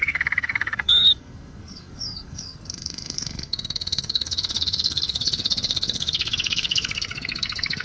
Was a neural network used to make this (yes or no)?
yes